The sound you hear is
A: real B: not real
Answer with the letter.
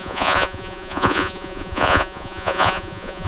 B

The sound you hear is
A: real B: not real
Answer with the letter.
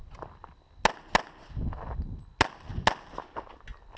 A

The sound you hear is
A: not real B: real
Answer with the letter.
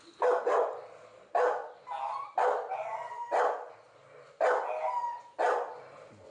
B